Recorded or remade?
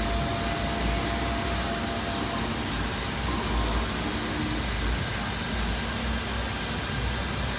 recorded